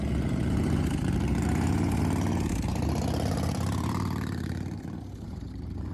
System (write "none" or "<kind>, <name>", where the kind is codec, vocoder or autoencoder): vocoder, BigVGAN v2